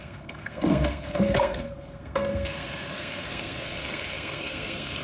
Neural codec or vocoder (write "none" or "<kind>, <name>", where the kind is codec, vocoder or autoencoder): codec, SNAC